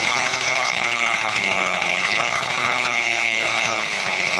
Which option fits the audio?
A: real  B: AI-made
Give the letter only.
B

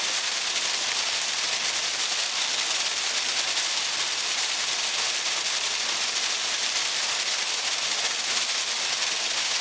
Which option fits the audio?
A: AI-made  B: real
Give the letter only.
B